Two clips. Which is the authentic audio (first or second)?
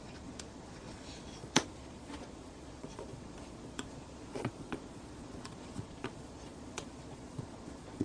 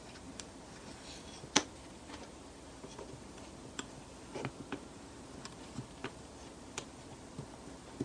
second